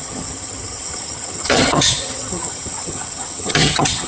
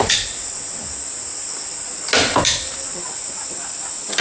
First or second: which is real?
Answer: second